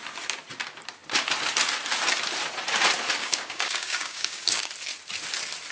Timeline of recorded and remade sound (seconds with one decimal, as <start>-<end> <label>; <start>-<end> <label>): 0.0-3.2 recorded; 3.2-4.7 remade; 4.7-5.7 recorded